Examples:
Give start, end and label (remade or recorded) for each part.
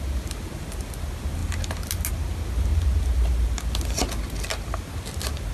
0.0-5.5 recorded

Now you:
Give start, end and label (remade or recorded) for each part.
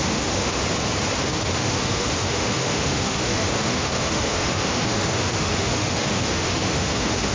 0.0-0.6 remade; 0.6-1.2 recorded; 1.2-7.3 remade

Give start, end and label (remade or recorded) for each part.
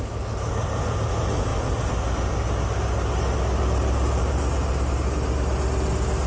0.0-6.3 recorded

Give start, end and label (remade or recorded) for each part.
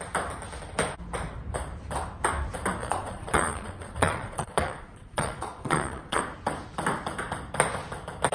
0.0-2.8 recorded; 2.8-6.2 remade; 6.2-8.3 recorded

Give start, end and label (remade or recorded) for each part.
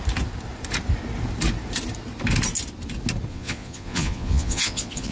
0.0-3.3 recorded; 3.3-5.1 remade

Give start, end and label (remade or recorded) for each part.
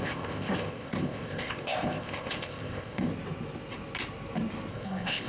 0.0-3.1 remade; 3.1-4.7 recorded; 4.7-5.3 remade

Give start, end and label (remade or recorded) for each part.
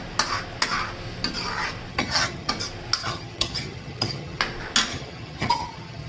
0.0-1.9 recorded; 1.9-2.5 remade; 2.5-3.0 recorded; 3.0-4.4 remade; 4.4-4.9 recorded; 4.9-6.1 remade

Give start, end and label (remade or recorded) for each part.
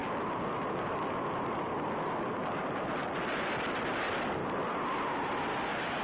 0.0-6.0 recorded